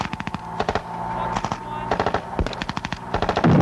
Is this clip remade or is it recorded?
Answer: recorded